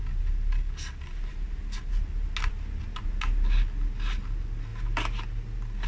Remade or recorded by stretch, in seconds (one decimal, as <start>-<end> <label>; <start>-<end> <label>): 0.0-5.9 recorded